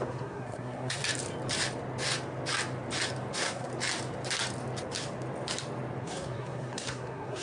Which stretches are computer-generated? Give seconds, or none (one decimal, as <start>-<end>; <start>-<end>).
0.0-1.0; 3.3-3.7; 6.0-7.4